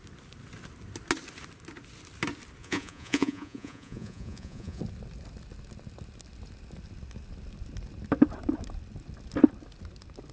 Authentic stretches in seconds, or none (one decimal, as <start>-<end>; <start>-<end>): 0.0-2.6; 4.8-10.3